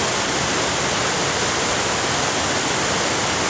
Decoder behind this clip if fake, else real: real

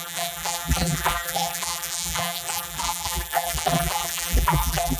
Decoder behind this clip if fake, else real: fake, vocoder, BigVGAN v2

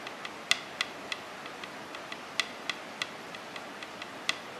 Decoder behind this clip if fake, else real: real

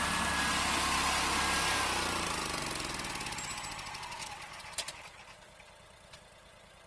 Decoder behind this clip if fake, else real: real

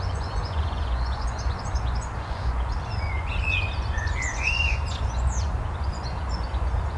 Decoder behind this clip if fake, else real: fake, vocoder, Vocos